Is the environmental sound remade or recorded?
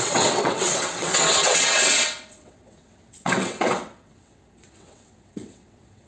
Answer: remade